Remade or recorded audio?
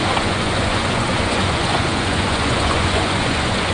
remade